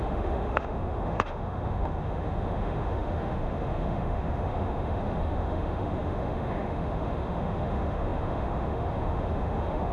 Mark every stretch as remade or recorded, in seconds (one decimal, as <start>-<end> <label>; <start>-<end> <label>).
0.0-9.9 remade

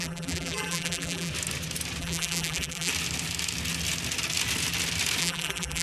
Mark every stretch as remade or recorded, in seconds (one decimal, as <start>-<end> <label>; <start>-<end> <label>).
0.0-1.3 remade; 1.3-2.0 recorded; 2.0-2.9 remade; 2.9-5.2 recorded; 5.2-5.8 remade

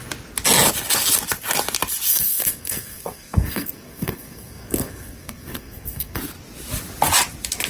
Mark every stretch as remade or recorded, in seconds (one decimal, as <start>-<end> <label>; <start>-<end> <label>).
0.0-2.1 recorded; 2.1-6.2 remade; 6.2-7.7 recorded

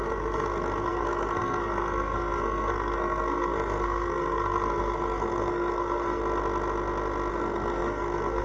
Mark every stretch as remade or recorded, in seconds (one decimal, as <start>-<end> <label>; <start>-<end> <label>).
0.0-6.2 remade; 6.2-7.3 recorded; 7.3-8.4 remade

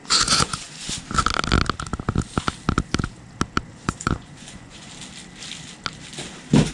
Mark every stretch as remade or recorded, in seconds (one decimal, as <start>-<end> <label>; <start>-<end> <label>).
0.0-1.0 remade; 1.0-3.7 recorded; 3.7-4.9 remade; 4.9-6.7 recorded